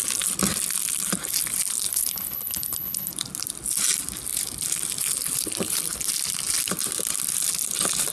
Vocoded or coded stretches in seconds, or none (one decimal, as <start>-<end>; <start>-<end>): 1.9-3.1

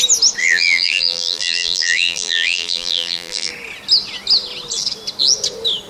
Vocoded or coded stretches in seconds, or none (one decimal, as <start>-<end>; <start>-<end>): 0.4-3.5

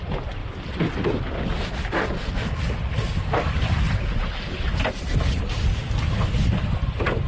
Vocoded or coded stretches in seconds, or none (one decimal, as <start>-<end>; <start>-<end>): none

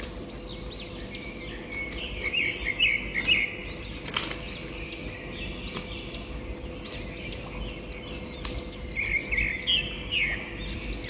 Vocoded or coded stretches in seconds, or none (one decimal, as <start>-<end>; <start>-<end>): none

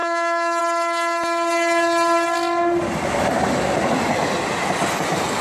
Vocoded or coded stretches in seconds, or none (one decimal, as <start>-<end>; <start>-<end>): 0.0-0.6